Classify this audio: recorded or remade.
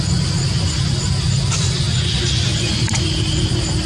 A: recorded